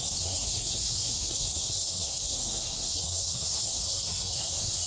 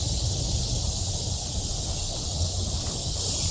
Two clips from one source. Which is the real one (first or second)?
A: second